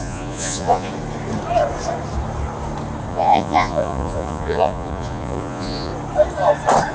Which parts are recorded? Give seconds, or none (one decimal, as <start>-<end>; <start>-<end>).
0.9-3.1; 5.9-6.9